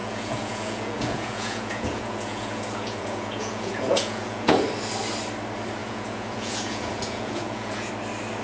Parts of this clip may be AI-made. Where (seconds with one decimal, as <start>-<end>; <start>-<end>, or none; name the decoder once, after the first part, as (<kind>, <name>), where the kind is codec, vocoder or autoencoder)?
0.0-4.5 (vocoder, Vocos); 5.8-7.9